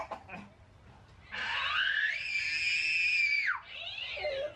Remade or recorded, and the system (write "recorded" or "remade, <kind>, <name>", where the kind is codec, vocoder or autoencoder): recorded